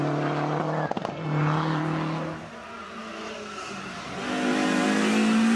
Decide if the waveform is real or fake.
real